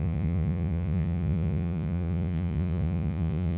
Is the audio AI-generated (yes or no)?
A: yes